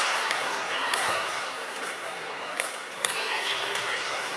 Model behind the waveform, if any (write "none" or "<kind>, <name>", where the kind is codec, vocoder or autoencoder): codec, SNAC